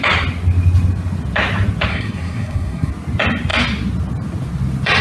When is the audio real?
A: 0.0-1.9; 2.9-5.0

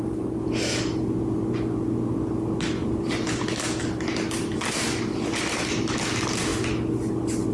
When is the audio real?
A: 0.0-2.8; 5.9-7.5

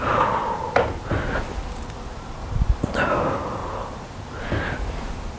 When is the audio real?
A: 0.0-2.1; 2.9-3.6; 4.4-5.4

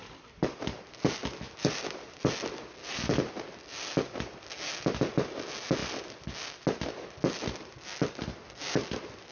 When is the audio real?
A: 0.0-1.2; 2.2-9.3